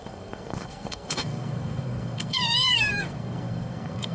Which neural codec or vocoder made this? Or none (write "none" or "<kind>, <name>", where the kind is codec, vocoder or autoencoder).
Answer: codec, SNAC